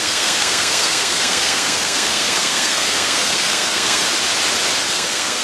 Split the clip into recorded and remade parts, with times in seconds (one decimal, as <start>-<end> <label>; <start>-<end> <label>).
0.0-4.0 remade; 4.0-4.9 recorded; 4.9-5.4 remade